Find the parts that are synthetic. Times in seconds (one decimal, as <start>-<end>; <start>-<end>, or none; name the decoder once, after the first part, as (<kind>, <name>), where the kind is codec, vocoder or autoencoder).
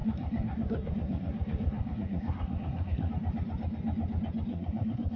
0.0-3.1 (codec, SNAC); 4.5-5.2